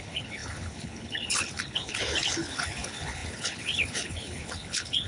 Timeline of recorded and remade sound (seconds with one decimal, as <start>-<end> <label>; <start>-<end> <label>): 0.0-5.1 remade